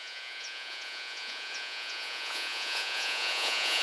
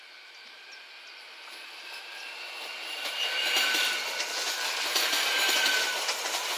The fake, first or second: first